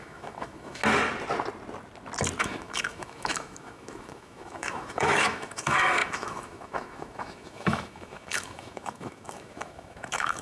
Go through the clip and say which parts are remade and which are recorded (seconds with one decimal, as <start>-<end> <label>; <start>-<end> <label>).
0.0-0.8 remade; 0.8-2.4 recorded; 2.4-10.4 remade